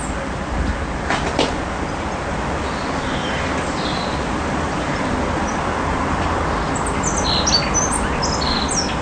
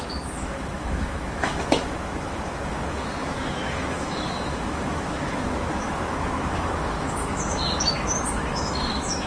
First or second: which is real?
first